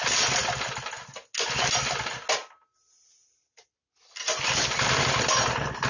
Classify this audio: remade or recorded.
recorded